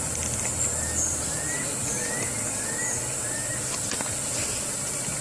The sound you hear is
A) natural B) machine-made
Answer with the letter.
A